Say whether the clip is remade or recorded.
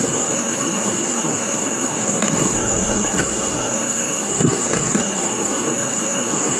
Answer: remade